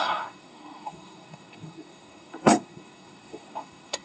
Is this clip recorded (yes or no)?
no